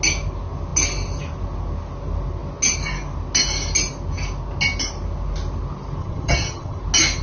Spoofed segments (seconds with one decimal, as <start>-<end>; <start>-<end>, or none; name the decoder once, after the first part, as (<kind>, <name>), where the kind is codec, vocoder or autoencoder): 6.0-6.8 (vocoder, HiFi-GAN)